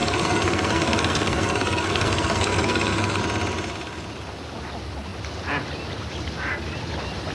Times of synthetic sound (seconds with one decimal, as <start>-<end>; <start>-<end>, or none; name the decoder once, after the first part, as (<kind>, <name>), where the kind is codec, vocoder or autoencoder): 0.0-3.2 (codec, SNAC)